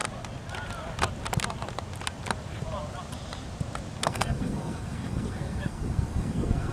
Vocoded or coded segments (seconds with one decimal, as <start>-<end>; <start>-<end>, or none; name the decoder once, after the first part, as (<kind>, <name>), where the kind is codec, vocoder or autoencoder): 4.0-6.7 (codec, SNAC)